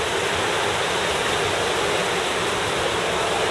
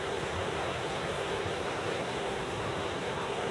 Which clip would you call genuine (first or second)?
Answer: first